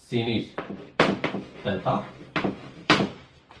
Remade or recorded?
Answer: remade